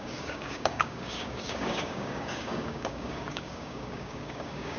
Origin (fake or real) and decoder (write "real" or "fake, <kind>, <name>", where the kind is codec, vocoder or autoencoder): fake, codec, DAC